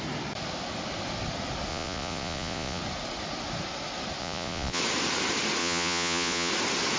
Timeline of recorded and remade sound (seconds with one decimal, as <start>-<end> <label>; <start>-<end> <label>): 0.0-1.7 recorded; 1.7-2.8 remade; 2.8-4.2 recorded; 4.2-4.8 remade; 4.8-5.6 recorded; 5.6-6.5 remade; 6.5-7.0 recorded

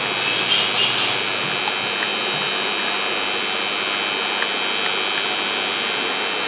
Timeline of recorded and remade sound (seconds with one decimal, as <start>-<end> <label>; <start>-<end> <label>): 0.0-6.5 recorded

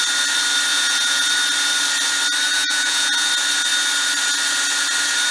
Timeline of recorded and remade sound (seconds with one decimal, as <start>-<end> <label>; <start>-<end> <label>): 0.0-0.7 recorded; 0.7-1.3 remade; 1.3-2.5 recorded; 2.5-3.3 remade; 3.3-5.3 recorded

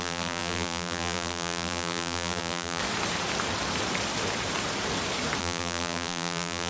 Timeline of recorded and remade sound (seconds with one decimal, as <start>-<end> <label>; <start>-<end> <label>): 0.0-2.8 remade; 2.8-5.4 recorded; 5.4-6.7 remade

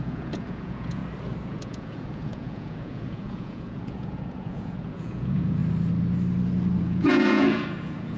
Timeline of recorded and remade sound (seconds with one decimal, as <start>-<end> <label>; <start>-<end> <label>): 0.0-1.0 remade; 1.0-1.5 recorded; 1.5-5.6 remade; 5.6-6.8 recorded; 6.8-8.2 remade